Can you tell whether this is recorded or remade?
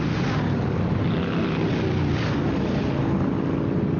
recorded